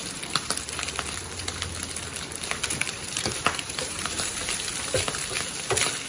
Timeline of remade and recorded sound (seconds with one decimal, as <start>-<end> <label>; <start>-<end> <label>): 0.0-2.8 recorded; 2.8-4.3 remade; 4.3-6.1 recorded